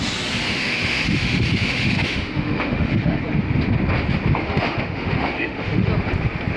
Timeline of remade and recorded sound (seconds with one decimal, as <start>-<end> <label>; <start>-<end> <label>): 0.0-0.5 recorded; 0.5-3.2 remade; 3.2-4.4 recorded; 4.4-5.9 remade; 5.9-6.6 recorded